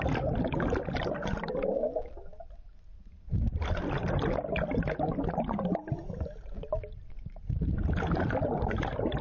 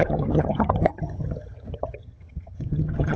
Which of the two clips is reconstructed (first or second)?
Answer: second